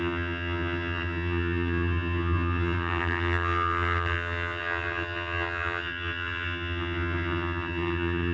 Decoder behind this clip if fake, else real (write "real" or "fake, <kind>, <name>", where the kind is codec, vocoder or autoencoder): fake, vocoder, HiFi-GAN